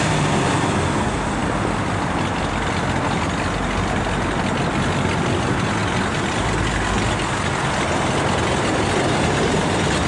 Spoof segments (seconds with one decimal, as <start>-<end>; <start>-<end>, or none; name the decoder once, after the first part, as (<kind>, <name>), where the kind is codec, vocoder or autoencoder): none